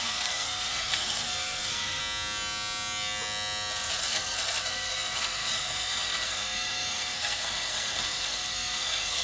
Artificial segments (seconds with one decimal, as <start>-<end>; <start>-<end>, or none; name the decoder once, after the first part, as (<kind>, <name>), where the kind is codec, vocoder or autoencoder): 0.0-2.0 (codec, SNAC); 4.0-9.2